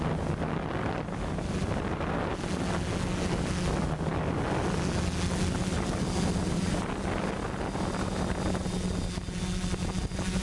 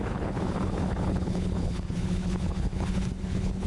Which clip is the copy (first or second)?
second